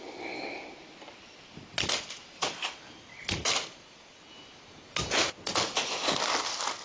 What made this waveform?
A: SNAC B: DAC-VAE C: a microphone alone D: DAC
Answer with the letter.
C